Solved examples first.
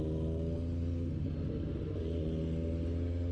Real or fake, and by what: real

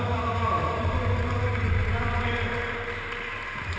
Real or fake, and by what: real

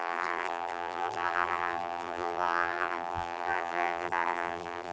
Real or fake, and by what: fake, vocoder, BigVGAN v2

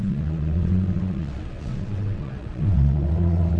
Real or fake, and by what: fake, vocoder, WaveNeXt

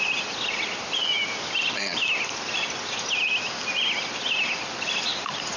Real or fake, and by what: real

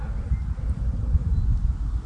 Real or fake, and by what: real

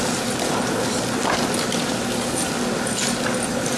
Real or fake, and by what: real